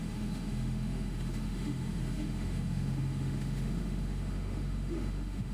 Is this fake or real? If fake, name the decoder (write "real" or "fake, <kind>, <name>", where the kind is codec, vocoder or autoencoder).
fake, autoencoder, DAC-VAE